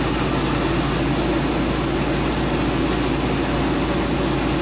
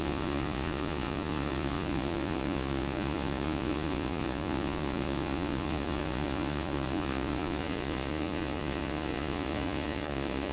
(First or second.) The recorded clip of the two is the first